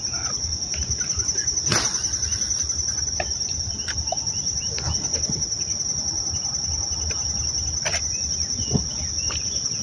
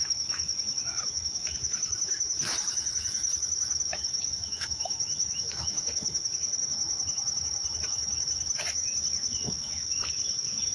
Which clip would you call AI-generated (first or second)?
second